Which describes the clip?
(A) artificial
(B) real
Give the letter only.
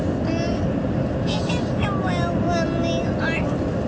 B